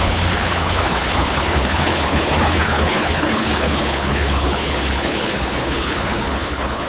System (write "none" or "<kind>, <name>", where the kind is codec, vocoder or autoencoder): codec, HILCodec